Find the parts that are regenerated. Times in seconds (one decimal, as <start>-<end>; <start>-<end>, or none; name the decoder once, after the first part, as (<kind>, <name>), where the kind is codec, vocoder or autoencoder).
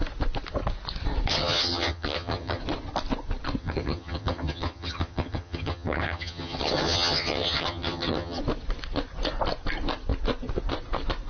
1.3-2.6 (vocoder, HiFi-GAN); 3.6-8.4